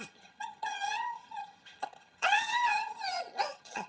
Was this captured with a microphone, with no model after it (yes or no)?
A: no